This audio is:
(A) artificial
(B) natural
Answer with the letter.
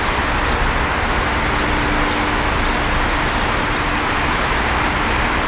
B